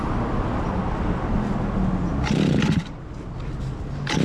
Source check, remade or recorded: recorded